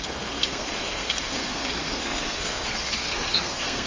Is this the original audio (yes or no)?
no